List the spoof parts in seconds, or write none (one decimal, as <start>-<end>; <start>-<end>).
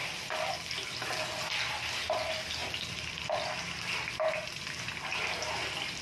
none